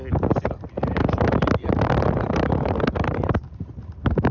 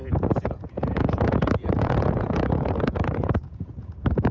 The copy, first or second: second